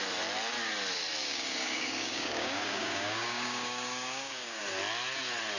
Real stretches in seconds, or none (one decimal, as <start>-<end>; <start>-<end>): 0.0-1.2; 4.6-5.6